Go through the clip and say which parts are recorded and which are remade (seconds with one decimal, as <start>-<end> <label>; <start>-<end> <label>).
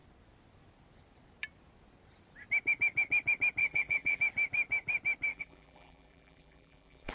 0.0-3.6 recorded; 3.6-4.2 remade; 4.2-5.3 recorded; 5.3-7.1 remade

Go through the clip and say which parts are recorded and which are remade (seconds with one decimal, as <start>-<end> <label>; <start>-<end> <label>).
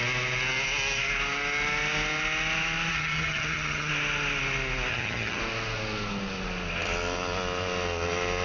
0.0-2.9 recorded; 2.9-3.9 remade; 3.9-4.9 recorded; 4.9-5.4 remade; 5.4-8.4 recorded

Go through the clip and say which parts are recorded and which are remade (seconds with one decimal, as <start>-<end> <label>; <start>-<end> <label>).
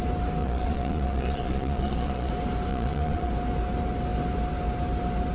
0.0-0.4 recorded; 0.4-2.3 remade; 2.3-2.7 recorded; 2.7-3.3 remade; 3.3-5.3 recorded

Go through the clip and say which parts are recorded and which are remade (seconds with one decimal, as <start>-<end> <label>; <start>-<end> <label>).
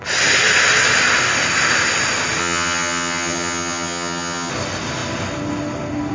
0.0-2.4 recorded; 2.4-4.5 remade; 4.5-6.1 recorded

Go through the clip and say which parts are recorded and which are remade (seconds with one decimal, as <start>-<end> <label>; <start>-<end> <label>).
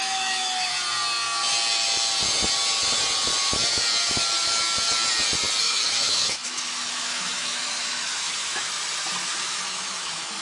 0.0-0.7 remade; 0.7-5.6 recorded; 5.6-8.7 remade; 8.7-9.3 recorded; 9.3-10.4 remade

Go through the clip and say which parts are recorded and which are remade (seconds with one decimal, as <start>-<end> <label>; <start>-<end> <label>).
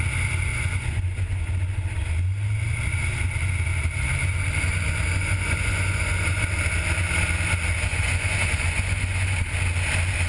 0.0-0.5 recorded; 0.5-1.5 remade; 1.5-5.2 recorded; 5.2-6.4 remade; 6.4-7.9 recorded; 7.9-9.4 remade; 9.4-10.3 recorded